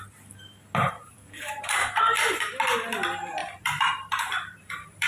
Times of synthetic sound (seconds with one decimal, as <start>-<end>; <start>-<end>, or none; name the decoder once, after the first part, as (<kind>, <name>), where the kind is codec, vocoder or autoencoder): 1.0-2.5 (vocoder, BigVGAN v2); 3.4-5.1

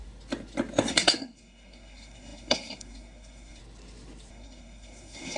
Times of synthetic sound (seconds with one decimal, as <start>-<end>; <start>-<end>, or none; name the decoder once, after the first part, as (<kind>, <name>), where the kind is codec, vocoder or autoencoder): 0.9-3.6 (codec, SNAC); 4.3-5.4

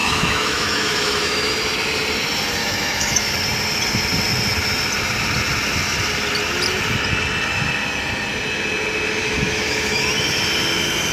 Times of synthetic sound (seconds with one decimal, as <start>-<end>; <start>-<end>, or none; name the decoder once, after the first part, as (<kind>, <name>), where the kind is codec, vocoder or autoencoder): 0.0-1.5 (autoencoder, DAC-VAE); 2.6-3.3; 9.2-10.1

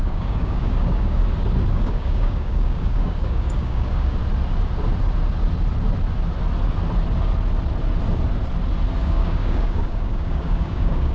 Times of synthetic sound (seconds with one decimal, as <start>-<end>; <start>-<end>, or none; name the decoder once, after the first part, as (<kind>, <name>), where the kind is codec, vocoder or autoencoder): 0.0-1.2 (codec, DAC); 1.7-4.2; 9.0-11.1

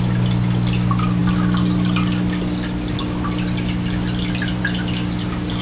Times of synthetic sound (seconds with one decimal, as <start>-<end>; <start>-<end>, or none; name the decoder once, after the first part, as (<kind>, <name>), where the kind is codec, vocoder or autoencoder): none

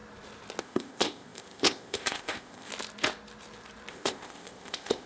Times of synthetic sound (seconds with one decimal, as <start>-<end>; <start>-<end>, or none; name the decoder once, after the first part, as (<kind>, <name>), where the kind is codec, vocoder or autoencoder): 0.6-2.7 (codec, ZipCodec); 3.9-5.1

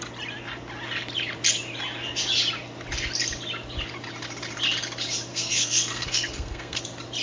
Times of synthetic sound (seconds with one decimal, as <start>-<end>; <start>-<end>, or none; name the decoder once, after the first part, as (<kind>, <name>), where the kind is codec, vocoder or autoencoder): 5.3-6.8 (codec, SNAC)